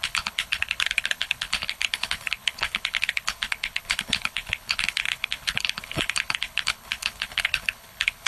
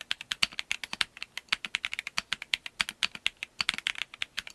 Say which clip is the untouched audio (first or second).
second